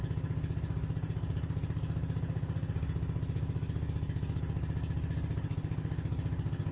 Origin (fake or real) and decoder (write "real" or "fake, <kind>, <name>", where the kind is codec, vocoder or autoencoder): real